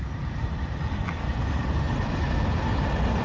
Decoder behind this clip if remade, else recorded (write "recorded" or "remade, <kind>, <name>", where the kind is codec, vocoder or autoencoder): recorded